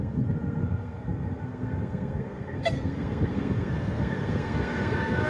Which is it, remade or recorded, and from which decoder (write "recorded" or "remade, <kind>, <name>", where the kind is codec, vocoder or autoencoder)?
remade, codec, SNAC